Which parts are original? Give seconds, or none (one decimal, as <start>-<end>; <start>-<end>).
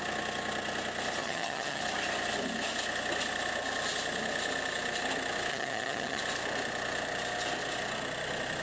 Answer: 0.0-1.2; 1.8-5.5; 6.2-8.6